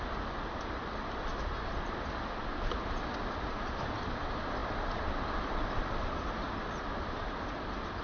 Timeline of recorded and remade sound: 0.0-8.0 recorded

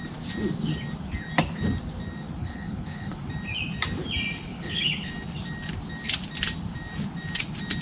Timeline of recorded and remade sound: 0.0-2.4 recorded; 2.4-3.2 remade; 3.2-4.5 recorded; 4.5-5.1 remade; 5.1-7.8 recorded